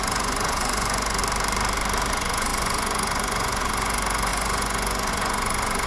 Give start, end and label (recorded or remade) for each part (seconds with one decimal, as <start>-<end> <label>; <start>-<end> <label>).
0.0-1.2 remade; 1.2-2.1 recorded; 2.1-5.9 remade